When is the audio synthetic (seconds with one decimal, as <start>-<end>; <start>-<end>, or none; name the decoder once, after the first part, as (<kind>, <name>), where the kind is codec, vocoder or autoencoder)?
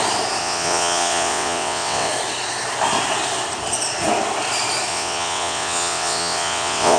0.4-2.1 (vocoder, WaveNeXt); 4.9-7.0